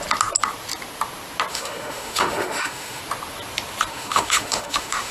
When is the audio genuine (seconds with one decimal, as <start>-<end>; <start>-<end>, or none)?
0.0-1.5; 3.0-3.9